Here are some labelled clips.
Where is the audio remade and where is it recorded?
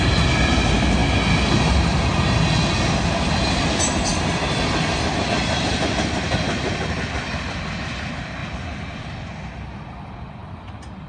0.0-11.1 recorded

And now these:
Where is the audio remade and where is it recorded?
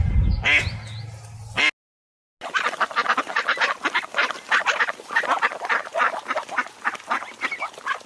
0.0-8.1 recorded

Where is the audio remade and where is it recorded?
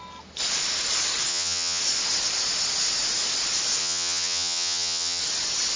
0.0-1.3 recorded; 1.3-1.8 remade; 1.8-3.8 recorded; 3.8-5.2 remade; 5.2-5.8 recorded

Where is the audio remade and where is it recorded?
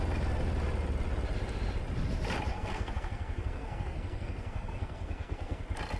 0.0-2.5 recorded; 2.5-5.6 remade; 5.6-6.0 recorded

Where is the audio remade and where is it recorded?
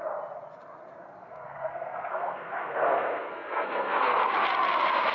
0.0-1.2 recorded; 1.2-4.2 remade; 4.2-5.1 recorded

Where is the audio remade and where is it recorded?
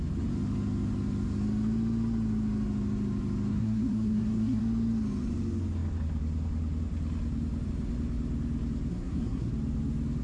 0.0-3.5 recorded; 3.5-4.6 remade; 4.6-8.9 recorded; 8.9-9.5 remade; 9.5-10.2 recorded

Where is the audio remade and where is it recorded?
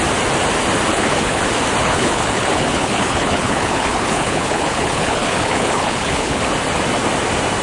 0.0-0.9 recorded; 0.9-1.4 remade; 1.4-1.8 recorded; 1.8-6.4 remade; 6.4-7.6 recorded